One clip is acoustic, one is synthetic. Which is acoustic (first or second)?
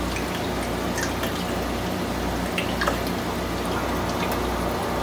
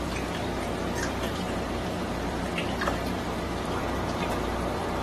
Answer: first